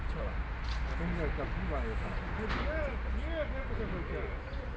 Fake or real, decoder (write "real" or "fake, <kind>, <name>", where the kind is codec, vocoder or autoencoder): real